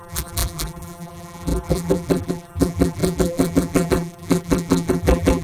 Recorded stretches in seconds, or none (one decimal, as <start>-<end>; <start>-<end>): none